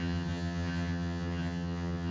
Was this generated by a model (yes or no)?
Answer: yes